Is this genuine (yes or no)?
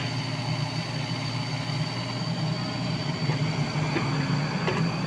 yes